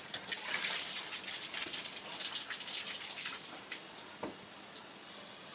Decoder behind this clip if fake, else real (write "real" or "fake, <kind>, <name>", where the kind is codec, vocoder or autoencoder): real